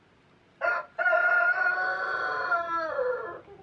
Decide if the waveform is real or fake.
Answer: real